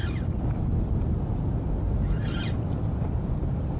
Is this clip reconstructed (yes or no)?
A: no